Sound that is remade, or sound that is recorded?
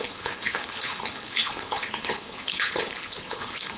remade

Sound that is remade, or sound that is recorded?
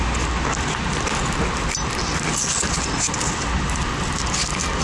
recorded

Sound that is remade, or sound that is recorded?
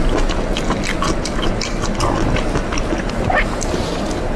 recorded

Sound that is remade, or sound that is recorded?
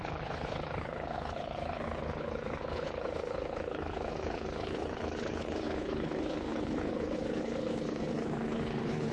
remade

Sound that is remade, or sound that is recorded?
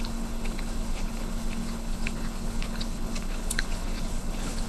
remade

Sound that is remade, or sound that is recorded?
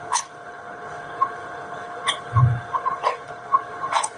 remade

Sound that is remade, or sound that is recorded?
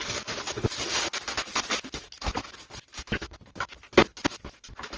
recorded